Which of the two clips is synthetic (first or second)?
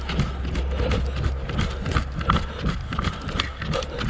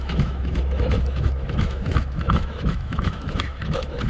second